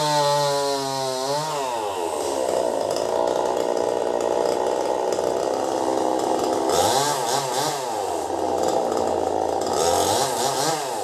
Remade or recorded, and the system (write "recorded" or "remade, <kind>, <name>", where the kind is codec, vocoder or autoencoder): recorded